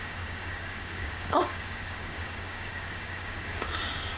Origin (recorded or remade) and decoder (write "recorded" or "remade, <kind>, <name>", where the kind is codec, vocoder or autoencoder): remade, codec, DAC